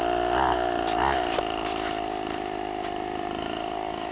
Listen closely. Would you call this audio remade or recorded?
remade